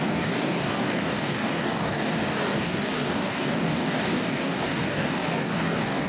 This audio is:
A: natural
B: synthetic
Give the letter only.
B